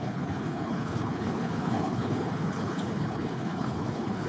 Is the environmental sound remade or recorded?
remade